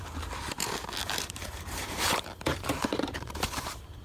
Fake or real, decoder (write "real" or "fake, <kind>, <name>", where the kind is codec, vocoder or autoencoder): fake, vocoder, BigVGAN v2